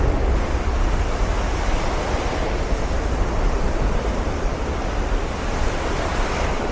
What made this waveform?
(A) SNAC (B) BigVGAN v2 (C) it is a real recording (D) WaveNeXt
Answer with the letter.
C